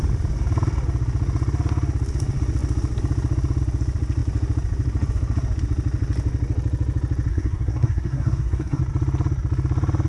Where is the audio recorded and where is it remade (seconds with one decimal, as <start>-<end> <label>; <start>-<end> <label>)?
0.0-7.3 recorded; 7.3-8.8 remade; 8.8-10.1 recorded